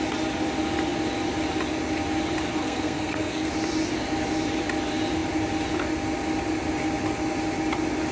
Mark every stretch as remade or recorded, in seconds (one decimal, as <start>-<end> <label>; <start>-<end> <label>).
0.0-2.6 recorded; 2.6-3.5 remade; 3.5-8.1 recorded